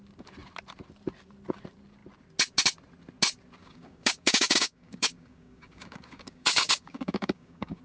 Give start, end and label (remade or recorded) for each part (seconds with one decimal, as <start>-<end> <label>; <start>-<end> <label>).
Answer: 0.0-3.6 recorded; 3.6-7.8 remade